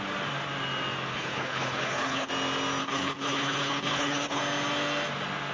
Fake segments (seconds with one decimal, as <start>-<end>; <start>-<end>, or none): 1.1-2.3; 2.8-4.4